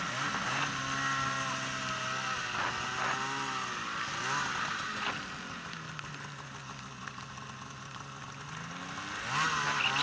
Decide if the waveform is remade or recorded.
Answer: recorded